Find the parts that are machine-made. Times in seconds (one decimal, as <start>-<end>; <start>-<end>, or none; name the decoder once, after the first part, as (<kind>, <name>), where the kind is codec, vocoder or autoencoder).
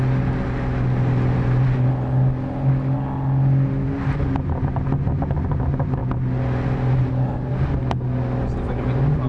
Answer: none